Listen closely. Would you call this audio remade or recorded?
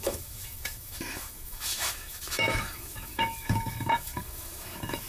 remade